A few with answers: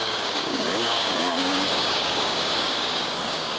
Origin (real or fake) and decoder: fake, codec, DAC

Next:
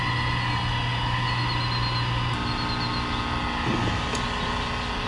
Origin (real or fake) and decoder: real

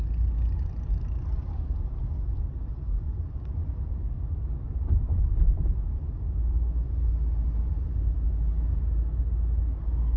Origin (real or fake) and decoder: real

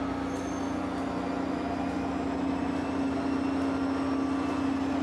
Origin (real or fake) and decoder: real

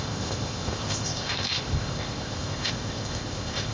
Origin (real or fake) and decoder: fake, codec, ZipCodec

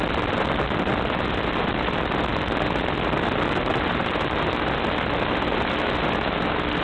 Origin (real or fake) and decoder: real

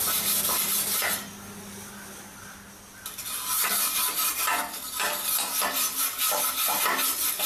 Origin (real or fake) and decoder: real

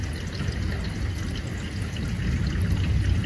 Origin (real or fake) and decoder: real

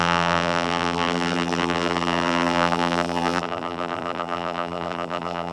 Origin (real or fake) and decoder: fake, vocoder, BigVGAN v2